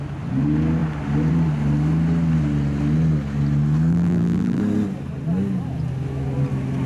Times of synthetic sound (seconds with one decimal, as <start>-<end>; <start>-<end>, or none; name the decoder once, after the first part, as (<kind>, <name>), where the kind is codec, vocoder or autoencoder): 3.9-4.6 (vocoder, BigVGAN v2)